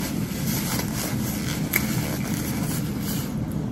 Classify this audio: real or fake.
real